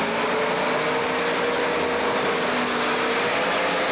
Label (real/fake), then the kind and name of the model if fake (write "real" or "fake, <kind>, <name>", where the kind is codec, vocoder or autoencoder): real